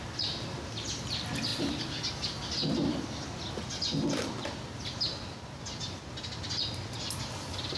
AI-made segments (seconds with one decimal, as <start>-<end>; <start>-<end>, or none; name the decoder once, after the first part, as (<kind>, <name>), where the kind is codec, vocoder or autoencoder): none